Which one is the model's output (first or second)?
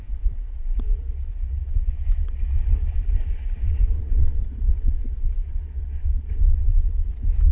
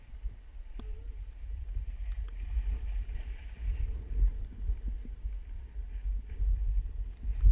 first